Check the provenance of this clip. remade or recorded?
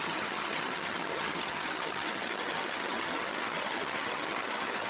remade